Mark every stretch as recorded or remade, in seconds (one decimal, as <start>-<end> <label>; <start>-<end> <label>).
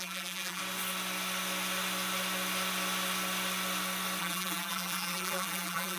0.0-0.6 remade; 0.6-4.2 recorded; 4.2-6.0 remade